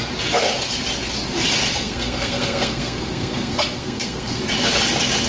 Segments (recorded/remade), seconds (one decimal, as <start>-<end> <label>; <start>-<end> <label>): 0.0-1.7 recorded; 1.7-4.4 remade; 4.4-5.3 recorded